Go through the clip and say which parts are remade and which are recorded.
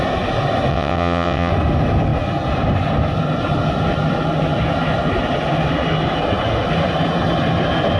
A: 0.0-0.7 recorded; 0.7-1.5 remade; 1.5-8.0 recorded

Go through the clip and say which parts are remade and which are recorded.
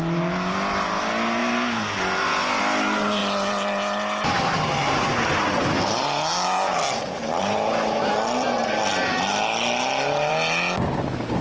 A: 0.0-11.4 recorded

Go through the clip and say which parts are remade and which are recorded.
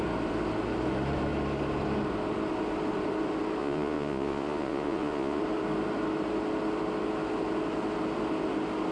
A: 0.0-3.6 recorded; 3.6-5.4 remade; 5.4-8.9 recorded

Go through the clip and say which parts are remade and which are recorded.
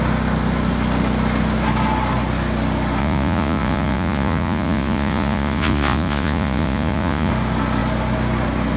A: 0.0-3.0 recorded; 3.0-7.3 remade; 7.3-8.8 recorded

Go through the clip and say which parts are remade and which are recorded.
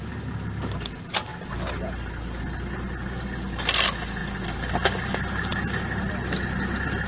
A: 0.0-7.1 recorded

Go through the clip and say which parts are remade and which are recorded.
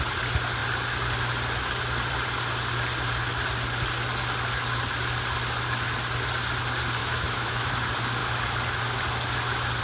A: 0.0-7.0 recorded; 7.0-7.7 remade; 7.7-9.8 recorded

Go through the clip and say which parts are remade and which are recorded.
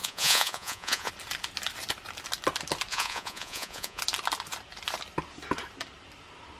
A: 0.0-1.1 remade; 1.1-2.9 recorded; 2.9-4.0 remade; 4.0-6.6 recorded